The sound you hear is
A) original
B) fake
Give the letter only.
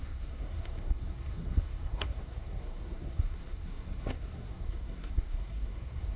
B